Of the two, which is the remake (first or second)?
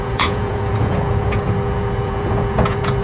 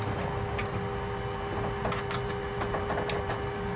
first